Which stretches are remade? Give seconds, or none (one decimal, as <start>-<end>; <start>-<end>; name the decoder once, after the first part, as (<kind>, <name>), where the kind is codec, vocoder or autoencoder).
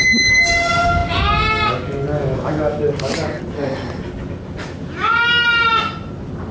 2.1-2.8 (autoencoder, DAC-VAE)